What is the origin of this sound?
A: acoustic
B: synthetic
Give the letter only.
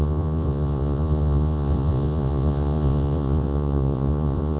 B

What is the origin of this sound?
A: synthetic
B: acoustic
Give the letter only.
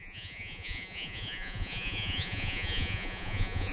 A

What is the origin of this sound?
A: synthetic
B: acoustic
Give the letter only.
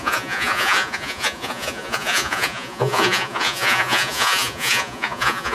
A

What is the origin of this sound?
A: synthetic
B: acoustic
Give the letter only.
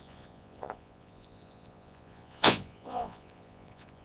A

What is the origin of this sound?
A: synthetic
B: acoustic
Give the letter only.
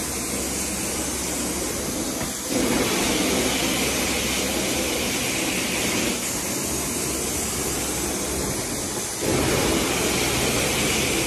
B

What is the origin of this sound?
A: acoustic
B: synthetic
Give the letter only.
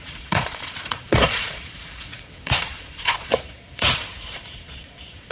B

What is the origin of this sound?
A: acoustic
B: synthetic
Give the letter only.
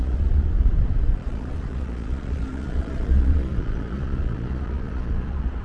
B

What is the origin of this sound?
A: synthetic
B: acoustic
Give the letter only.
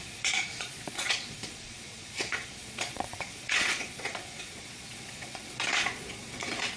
A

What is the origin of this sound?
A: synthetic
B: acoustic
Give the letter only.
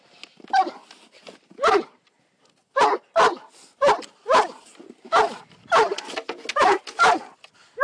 B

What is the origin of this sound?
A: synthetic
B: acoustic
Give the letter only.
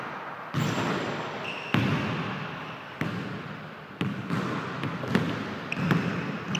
B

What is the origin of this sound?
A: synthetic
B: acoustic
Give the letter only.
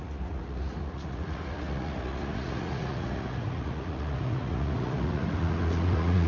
A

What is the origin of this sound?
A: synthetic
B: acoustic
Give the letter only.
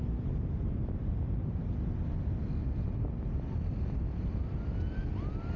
B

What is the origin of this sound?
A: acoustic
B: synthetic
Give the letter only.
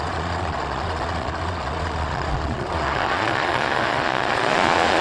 B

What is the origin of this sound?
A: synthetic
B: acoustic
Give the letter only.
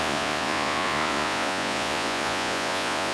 A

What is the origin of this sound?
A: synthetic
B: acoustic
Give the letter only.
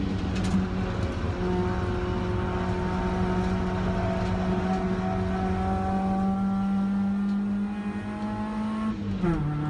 B